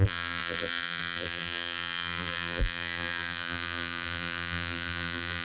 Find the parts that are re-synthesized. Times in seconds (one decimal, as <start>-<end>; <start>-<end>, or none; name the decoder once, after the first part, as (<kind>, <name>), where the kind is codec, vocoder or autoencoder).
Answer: 0.0-5.4 (vocoder, BigVGAN v2)